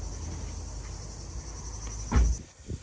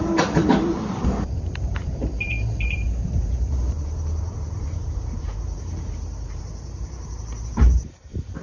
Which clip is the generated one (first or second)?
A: second